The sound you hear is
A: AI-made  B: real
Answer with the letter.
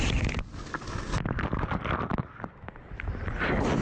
B